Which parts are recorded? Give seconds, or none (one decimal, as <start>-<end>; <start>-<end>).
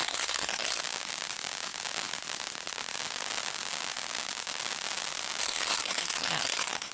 0.8-5.4